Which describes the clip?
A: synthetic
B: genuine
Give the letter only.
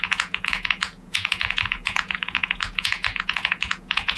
A